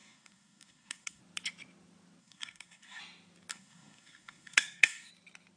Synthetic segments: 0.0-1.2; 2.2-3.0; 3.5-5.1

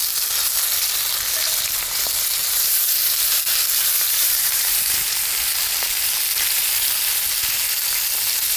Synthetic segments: 2.4-5.1

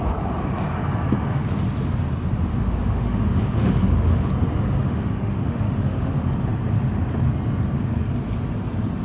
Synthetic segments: 2.5-4.3; 4.8-6.1

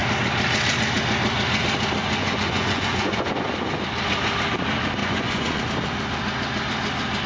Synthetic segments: 2.0-3.5; 5.0-5.6

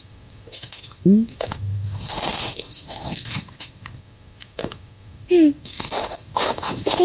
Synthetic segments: 0.0-7.0

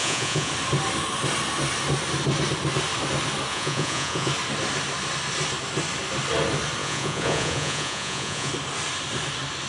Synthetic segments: 0.0-0.5; 3.5-4.3; 6.8-8.5

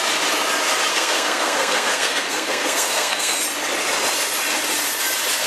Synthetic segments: 0.9-3.4